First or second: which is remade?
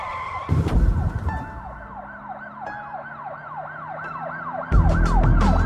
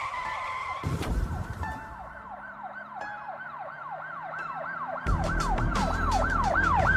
second